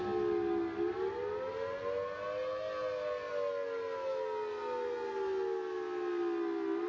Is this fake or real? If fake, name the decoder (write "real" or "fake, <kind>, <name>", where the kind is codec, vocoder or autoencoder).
real